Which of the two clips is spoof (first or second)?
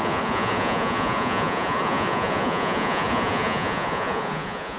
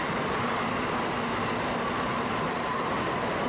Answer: first